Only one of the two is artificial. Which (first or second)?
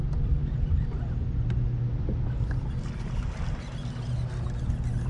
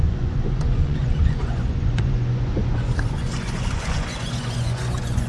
second